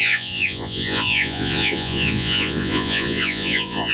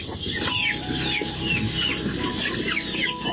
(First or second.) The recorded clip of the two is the second